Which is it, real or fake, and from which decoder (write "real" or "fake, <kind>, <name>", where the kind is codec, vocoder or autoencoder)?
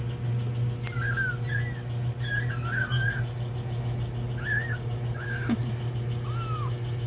real